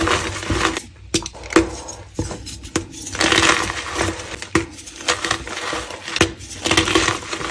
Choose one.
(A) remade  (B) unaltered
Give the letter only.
B